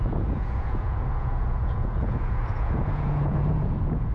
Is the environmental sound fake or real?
fake